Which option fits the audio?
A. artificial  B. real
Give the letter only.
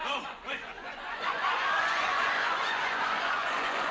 A